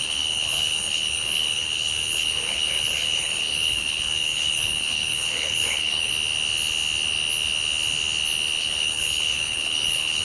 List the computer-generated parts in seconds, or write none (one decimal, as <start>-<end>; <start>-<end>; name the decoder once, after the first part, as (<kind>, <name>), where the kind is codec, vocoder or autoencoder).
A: 0.0-6.1 (codec, HILCodec); 8.6-10.2